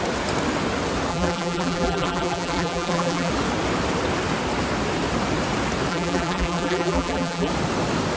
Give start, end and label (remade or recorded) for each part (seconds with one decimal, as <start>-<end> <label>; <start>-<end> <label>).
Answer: 0.0-1.1 recorded; 1.1-3.3 remade; 3.3-5.9 recorded; 5.9-7.5 remade; 7.5-8.2 recorded

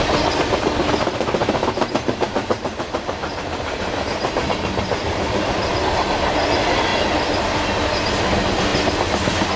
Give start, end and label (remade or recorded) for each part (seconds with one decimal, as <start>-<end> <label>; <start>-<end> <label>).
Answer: 0.0-1.4 recorded; 1.4-5.7 remade; 5.7-9.6 recorded

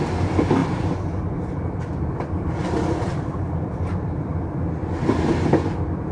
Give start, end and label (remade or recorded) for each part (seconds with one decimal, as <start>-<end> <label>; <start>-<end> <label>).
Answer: 0.0-0.6 recorded; 0.6-4.3 remade; 4.3-6.1 recorded

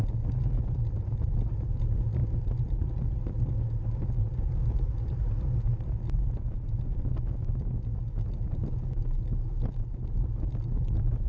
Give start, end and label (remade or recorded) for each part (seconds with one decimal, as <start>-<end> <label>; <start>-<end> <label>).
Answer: 0.0-11.3 recorded

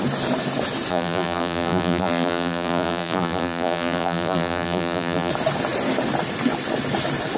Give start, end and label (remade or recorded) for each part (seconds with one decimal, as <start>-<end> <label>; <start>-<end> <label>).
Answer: 0.0-0.9 recorded; 0.9-5.3 remade; 5.3-7.4 recorded

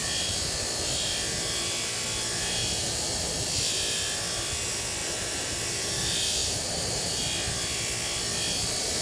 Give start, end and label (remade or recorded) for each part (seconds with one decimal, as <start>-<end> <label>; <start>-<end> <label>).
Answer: 0.0-5.0 recorded; 5.0-6.0 remade; 6.0-6.4 recorded; 6.4-7.2 remade; 7.2-9.0 recorded

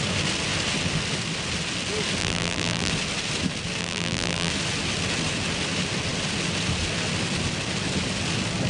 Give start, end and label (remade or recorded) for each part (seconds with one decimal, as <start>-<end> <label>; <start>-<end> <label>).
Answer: 0.0-2.2 recorded; 2.2-2.9 remade; 2.9-3.8 recorded; 3.8-4.5 remade; 4.5-8.7 recorded